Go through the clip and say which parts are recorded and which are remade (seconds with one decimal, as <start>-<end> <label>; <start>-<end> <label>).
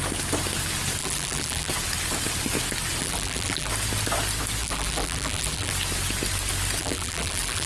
0.0-1.0 recorded; 1.0-1.7 remade; 1.7-3.0 recorded; 3.0-3.7 remade; 3.7-4.6 recorded; 4.6-5.7 remade; 5.7-6.8 recorded; 6.8-7.7 remade